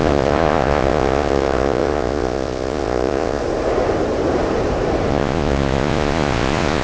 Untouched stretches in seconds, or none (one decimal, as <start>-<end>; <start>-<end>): 3.4-5.1